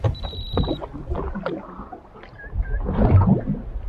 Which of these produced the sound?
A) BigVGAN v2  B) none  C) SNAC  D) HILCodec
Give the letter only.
B